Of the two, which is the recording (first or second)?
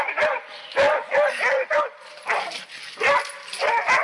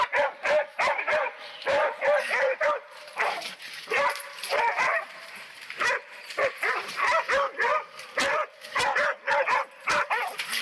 first